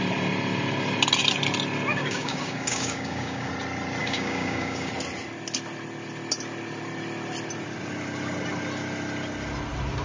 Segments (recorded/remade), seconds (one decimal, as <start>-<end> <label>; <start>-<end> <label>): 0.0-1.9 recorded; 1.9-3.5 remade; 3.5-4.0 recorded; 4.0-4.9 remade; 4.9-10.0 recorded